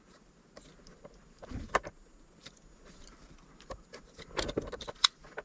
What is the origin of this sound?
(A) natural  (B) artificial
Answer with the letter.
A